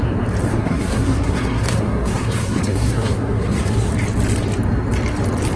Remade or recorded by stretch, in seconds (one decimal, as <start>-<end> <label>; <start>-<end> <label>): 0.0-0.5 recorded; 0.5-3.9 remade; 3.9-5.6 recorded